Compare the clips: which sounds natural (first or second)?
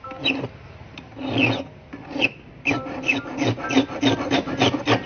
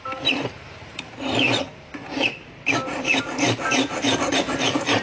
first